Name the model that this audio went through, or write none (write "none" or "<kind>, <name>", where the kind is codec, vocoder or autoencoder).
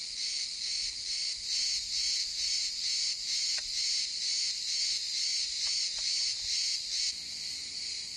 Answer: none